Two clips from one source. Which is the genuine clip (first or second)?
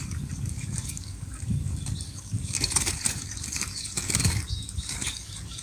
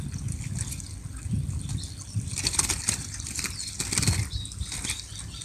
second